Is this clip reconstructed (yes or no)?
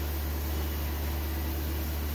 no